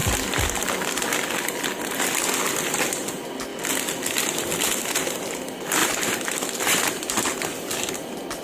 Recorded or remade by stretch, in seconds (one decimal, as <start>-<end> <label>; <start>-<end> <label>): 0.0-5.8 recorded; 5.8-6.8 remade; 6.8-8.4 recorded